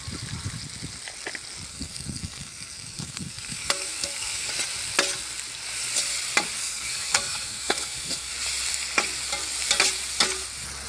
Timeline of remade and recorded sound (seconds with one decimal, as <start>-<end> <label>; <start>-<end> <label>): 0.0-1.7 recorded; 1.7-4.5 remade; 4.5-6.6 recorded; 6.6-8.3 remade; 8.3-10.9 recorded